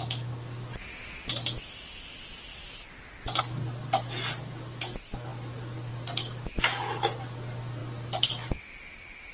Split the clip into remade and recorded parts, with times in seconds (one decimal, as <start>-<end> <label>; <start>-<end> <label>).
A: 0.0-9.3 recorded